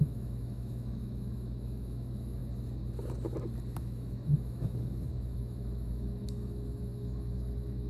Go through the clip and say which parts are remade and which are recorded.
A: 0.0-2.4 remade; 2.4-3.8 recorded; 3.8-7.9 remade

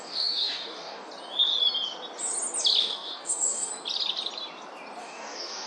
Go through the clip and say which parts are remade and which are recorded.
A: 0.0-1.1 remade; 1.1-2.8 recorded; 2.8-3.7 remade; 3.7-5.0 recorded; 5.0-5.7 remade

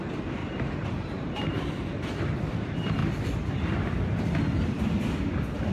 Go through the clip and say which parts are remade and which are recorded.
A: 0.0-0.4 recorded; 0.4-2.2 remade; 2.2-5.7 recorded

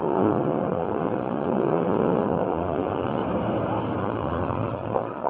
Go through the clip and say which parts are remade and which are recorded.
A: 0.0-3.2 remade; 3.2-4.0 recorded; 4.0-5.3 remade